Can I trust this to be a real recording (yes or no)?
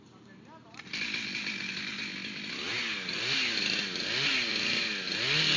yes